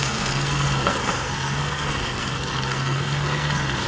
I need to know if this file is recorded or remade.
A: remade